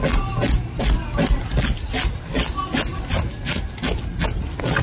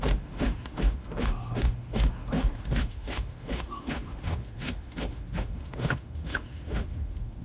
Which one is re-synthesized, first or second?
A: second